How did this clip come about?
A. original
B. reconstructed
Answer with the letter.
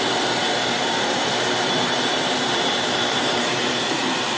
B